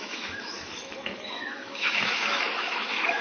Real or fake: fake